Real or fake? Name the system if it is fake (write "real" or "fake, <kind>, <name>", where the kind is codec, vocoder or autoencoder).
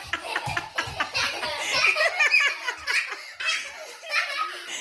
real